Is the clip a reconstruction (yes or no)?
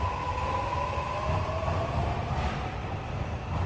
no